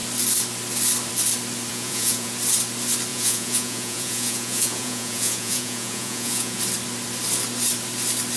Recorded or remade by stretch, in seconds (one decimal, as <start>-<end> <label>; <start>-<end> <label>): 0.0-1.7 recorded; 1.7-2.3 remade; 2.3-3.1 recorded; 3.1-6.6 remade; 6.6-8.4 recorded